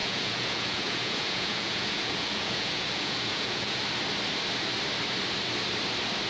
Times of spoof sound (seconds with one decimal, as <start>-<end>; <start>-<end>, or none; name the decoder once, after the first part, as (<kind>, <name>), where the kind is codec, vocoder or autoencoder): 0.0-3.8 (vocoder, Vocos)